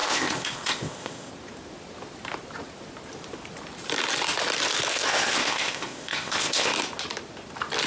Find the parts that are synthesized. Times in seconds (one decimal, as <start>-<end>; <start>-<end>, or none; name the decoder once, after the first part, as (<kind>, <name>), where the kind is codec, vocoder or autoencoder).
0.0-1.3 (codec, ZipCodec); 4.9-6.7